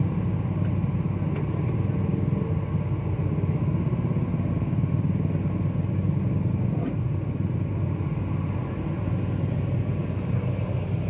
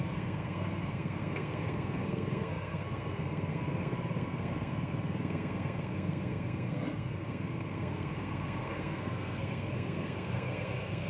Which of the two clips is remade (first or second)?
second